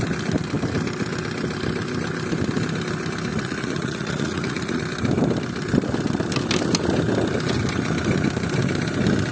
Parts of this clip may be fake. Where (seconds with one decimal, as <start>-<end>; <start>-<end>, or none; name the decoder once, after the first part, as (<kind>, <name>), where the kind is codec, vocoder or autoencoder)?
3.3-4.8 (vocoder, Vocos)